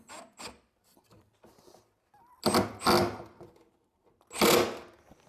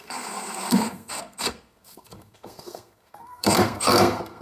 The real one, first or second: first